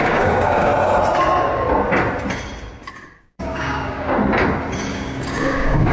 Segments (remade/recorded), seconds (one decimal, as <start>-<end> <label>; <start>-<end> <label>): 0.0-0.7 remade; 0.7-3.2 recorded; 3.2-4.2 remade; 4.2-4.9 recorded; 4.9-5.9 remade